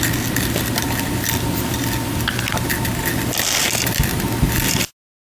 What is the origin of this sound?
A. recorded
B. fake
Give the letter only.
A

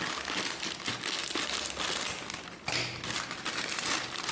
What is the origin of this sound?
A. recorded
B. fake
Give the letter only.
A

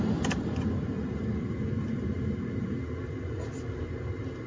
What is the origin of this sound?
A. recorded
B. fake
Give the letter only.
A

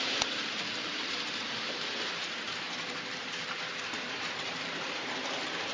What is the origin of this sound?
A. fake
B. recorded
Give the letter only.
A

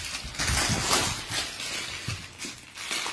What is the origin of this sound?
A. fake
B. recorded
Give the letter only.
B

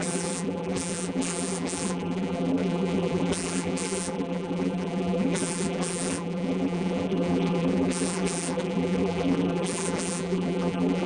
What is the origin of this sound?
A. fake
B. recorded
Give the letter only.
A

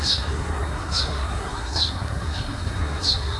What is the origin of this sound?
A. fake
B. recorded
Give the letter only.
A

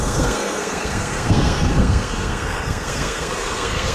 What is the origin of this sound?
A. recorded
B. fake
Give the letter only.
B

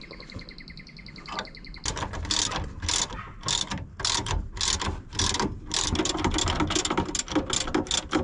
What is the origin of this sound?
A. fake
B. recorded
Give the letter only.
B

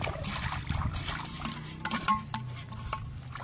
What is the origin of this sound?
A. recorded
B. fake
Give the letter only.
A